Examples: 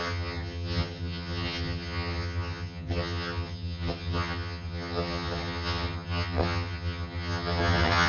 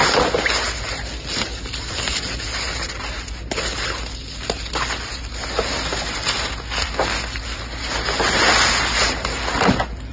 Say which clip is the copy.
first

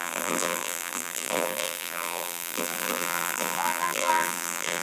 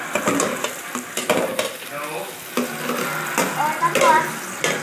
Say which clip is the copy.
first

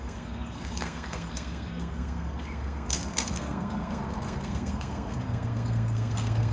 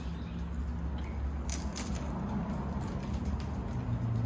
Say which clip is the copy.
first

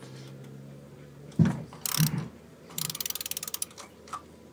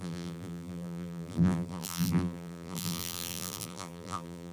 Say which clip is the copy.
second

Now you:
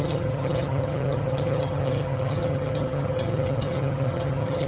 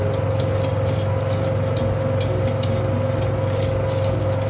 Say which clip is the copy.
first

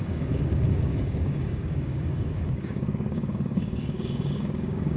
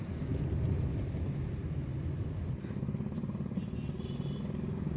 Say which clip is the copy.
first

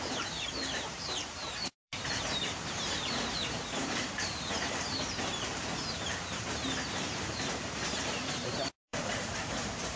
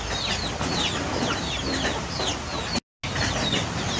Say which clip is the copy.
first